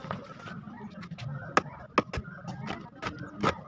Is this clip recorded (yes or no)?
yes